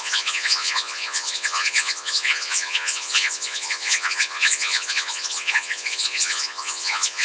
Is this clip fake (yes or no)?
yes